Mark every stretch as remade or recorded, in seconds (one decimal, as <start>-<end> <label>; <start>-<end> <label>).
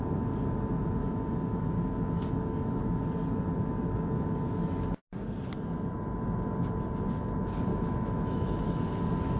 0.0-1.0 recorded; 1.0-3.0 remade; 3.0-7.7 recorded; 7.7-8.9 remade; 8.9-9.4 recorded